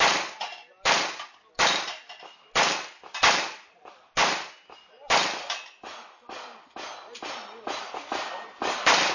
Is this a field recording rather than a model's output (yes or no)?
yes